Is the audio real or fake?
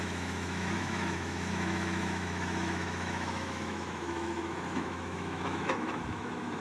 fake